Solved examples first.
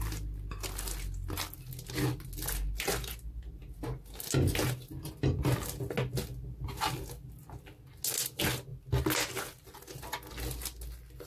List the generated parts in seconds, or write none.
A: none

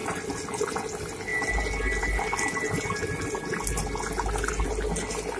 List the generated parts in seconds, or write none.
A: none

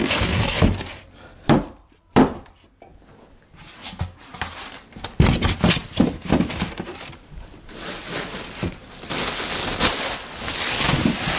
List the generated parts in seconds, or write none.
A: 0.0-2.9 (vocoder, BigVGAN v2); 4.3-8.8; 9.8-11.4

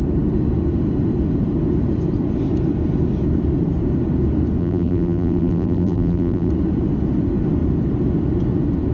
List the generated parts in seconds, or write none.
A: 4.6-6.5 (vocoder, BigVGAN v2)

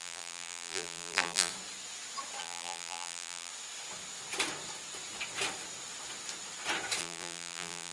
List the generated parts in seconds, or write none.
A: 0.0-1.5 (vocoder, BigVGAN v2); 2.4-3.5; 7.0-7.9

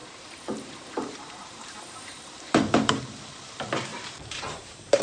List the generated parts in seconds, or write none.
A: 0.0-3.0 (vocoder, BigVGAN v2); 3.9-5.0

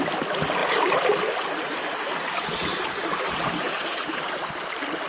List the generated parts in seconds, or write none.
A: 2.7-3.4 (vocoder, BigVGAN v2)

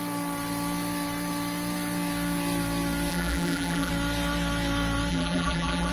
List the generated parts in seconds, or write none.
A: 3.1-3.9 (vocoder, BigVGAN v2); 5.1-5.9